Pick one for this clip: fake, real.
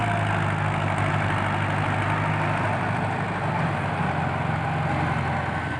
real